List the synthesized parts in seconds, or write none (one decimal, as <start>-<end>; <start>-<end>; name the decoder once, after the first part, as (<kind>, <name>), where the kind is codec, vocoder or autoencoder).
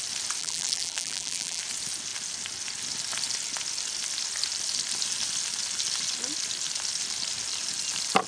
0.4-1.6 (vocoder, BigVGAN v2)